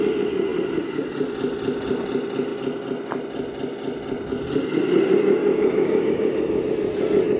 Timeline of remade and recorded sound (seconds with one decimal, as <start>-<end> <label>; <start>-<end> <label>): 0.0-5.4 recorded; 5.4-6.7 remade; 6.7-7.4 recorded